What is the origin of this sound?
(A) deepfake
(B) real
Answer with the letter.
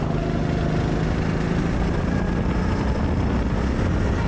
B